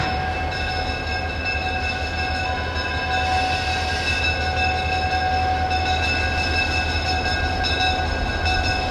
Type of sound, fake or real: real